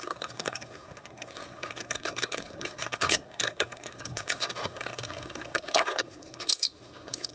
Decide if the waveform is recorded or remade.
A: remade